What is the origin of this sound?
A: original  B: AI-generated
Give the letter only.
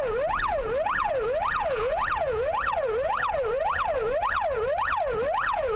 B